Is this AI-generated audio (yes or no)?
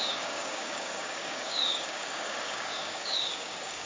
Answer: yes